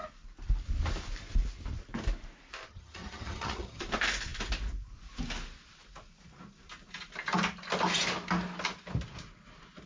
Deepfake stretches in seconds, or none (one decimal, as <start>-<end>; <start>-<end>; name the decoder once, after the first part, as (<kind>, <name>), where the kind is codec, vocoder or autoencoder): 2.7-3.8 (vocoder, HiFi-GAN)